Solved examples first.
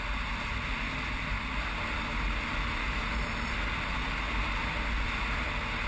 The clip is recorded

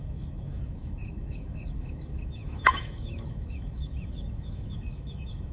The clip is remade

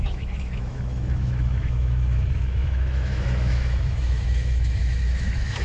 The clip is remade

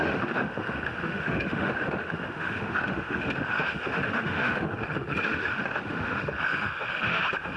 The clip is remade